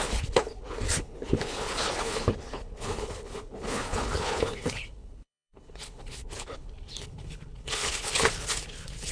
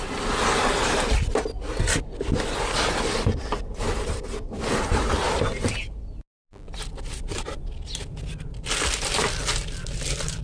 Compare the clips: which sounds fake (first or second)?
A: first